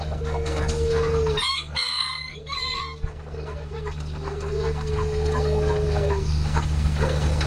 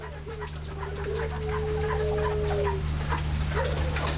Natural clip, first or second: second